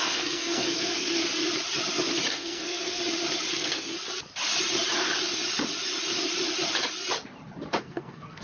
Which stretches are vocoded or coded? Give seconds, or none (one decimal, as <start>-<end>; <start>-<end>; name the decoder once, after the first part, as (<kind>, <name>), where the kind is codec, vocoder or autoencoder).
0.0-1.2 (codec, SNAC); 2.3-3.0; 3.5-3.9; 7.8-8.4